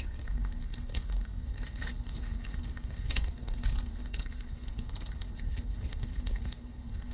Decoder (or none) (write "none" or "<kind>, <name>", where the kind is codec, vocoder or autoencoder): codec, SNAC